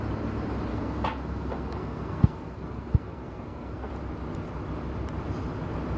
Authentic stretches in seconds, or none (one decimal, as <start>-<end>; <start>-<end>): 0.0-0.7; 3.9-6.0